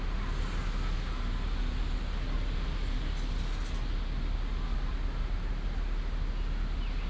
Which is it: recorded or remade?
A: recorded